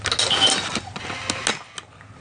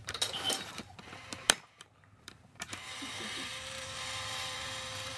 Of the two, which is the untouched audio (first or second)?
first